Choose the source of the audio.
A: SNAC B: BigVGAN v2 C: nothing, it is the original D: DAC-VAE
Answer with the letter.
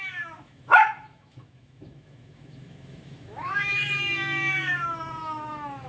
D